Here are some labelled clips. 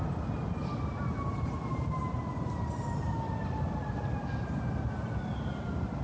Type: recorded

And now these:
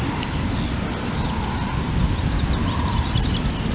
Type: recorded